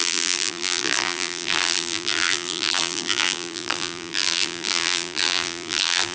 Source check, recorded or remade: remade